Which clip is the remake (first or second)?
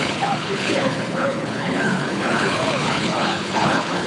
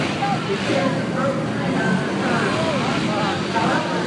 first